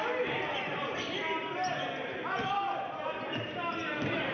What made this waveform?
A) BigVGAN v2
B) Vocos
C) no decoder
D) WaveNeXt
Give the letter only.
C